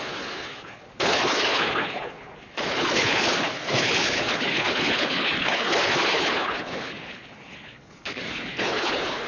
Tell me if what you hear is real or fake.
fake